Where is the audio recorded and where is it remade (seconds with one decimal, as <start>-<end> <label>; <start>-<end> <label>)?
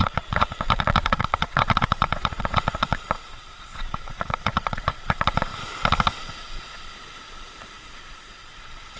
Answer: 0.0-5.5 remade; 5.5-6.2 recorded; 6.2-9.0 remade